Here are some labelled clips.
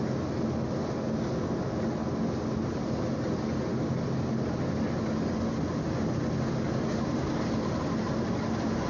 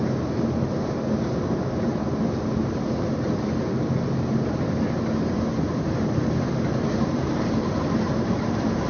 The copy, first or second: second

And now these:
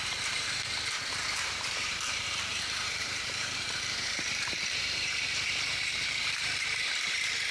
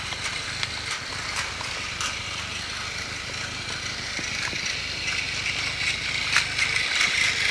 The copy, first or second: first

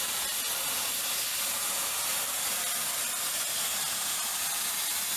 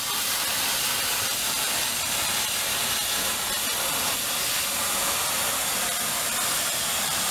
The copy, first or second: second